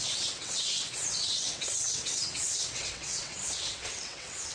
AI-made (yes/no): yes